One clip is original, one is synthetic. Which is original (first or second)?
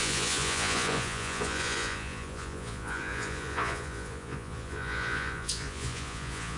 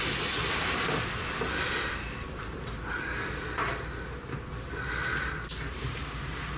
second